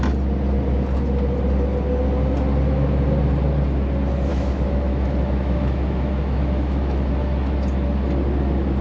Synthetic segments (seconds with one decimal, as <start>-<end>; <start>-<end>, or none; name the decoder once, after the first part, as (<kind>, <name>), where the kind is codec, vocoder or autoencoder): 4.3-7.1 (autoencoder, DAC-VAE)